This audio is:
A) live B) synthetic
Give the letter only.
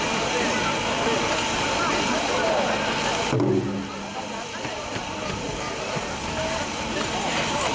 A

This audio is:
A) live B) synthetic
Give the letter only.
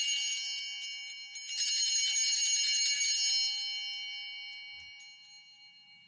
A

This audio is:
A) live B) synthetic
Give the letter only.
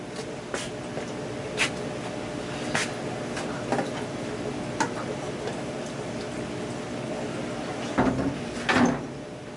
A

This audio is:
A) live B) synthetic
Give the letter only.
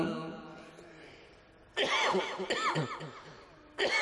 A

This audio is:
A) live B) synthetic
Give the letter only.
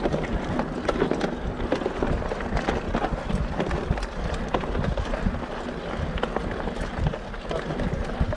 A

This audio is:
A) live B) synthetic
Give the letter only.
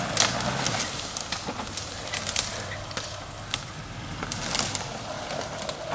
A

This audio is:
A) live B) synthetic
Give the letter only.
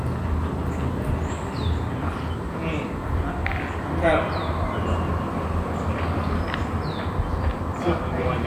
A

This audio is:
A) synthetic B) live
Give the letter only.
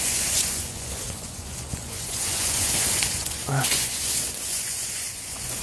A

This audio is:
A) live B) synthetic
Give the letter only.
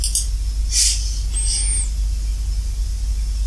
A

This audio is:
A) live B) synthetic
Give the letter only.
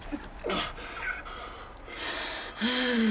A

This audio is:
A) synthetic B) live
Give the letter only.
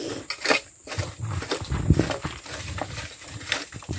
B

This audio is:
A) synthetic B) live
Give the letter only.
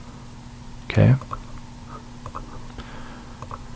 B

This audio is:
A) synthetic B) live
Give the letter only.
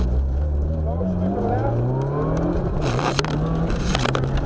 B